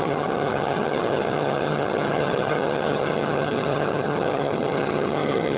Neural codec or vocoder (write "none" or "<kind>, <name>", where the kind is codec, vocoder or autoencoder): vocoder, HiFi-GAN